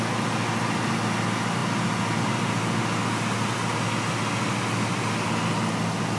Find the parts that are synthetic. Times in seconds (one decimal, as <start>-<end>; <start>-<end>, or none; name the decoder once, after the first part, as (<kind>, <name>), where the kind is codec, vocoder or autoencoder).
none